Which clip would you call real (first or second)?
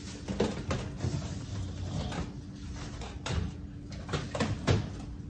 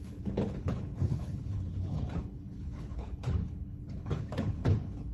first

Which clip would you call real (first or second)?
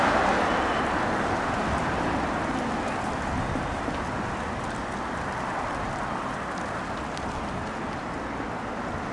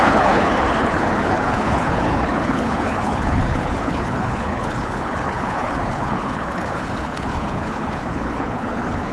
first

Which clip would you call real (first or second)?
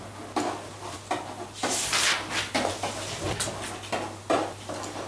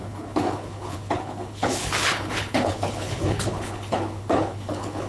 first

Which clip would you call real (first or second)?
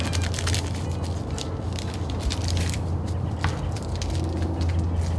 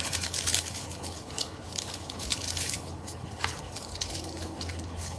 first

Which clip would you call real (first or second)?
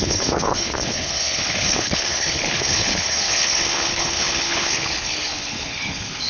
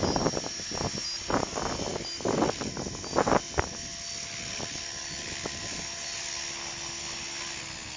second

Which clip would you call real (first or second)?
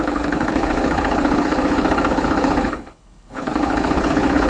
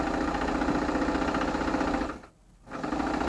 second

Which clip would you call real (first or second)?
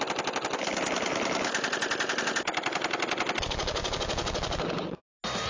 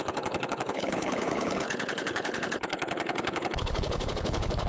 first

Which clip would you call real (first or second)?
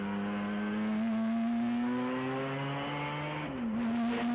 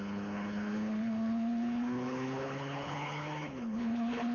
first